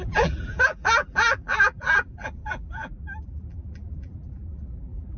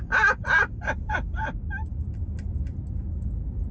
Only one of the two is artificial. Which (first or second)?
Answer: first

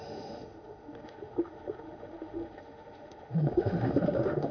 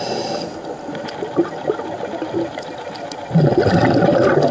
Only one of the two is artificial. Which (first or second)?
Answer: first